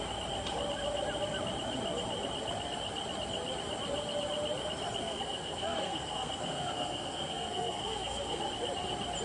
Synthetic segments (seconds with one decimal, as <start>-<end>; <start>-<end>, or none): 5.0-8.4